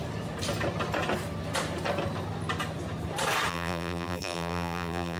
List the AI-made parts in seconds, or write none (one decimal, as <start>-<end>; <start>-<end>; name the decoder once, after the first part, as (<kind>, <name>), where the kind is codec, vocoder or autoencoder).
3.5-5.2 (vocoder, BigVGAN v2)